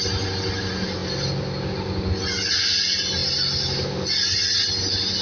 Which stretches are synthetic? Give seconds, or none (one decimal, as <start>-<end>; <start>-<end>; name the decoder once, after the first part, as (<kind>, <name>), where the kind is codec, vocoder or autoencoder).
none